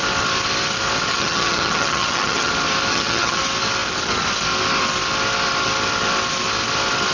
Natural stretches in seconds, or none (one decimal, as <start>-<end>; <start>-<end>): 0.0-1.1; 2.5-2.9; 3.4-7.1